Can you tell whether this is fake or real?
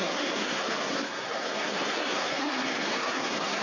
fake